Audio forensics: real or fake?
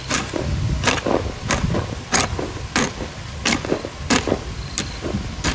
real